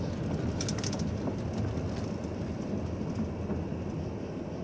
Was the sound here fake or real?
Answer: real